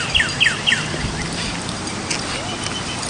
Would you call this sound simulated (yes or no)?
no